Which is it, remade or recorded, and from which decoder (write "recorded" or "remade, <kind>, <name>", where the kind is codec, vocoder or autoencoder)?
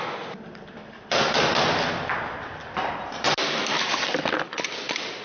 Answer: remade, vocoder, BigVGAN v2